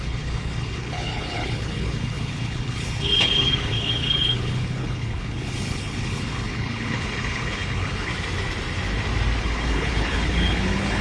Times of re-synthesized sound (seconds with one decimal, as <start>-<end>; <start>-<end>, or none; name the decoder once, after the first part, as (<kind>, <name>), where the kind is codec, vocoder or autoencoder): 0.0-8.1 (codec, HILCodec); 9.4-11.0